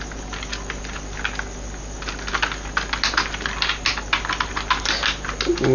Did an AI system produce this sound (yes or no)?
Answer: no